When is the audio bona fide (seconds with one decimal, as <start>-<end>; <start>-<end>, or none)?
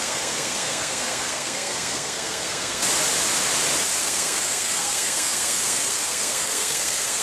2.8-4.0